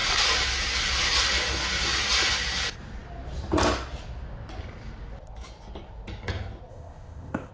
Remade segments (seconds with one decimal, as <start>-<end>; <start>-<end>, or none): 6.7-7.5